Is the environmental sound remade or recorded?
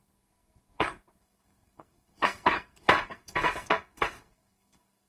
remade